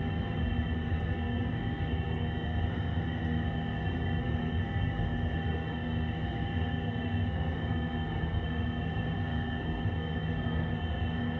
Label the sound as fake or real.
fake